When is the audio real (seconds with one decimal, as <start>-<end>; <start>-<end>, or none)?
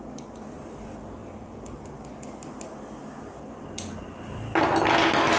0.0-5.4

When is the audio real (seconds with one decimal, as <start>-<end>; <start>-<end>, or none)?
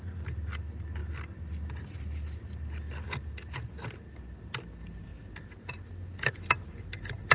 0.0-7.3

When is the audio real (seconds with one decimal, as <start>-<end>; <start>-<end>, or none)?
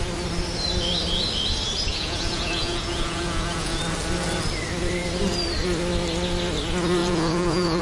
0.0-1.9; 3.8-7.0